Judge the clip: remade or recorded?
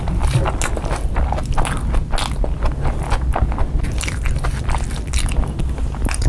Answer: recorded